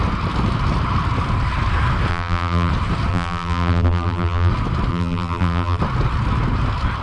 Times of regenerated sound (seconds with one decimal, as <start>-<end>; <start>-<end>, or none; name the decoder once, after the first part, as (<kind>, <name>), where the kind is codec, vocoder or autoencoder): 2.1-2.7 (vocoder, BigVGAN v2); 3.1-4.5; 4.9-5.8